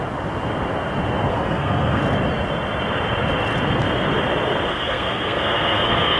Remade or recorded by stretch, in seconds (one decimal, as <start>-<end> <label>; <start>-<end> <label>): 0.0-1.3 recorded; 1.3-2.0 remade; 2.0-4.7 recorded; 4.7-6.2 remade